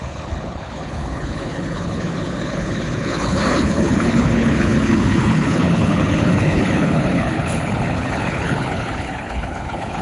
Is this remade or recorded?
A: remade